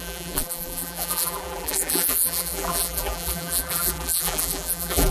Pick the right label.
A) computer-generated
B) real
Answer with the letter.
A